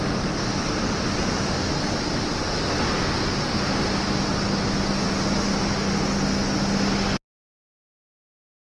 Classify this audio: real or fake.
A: real